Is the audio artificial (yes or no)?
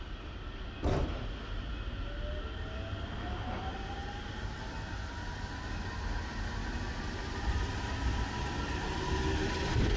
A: no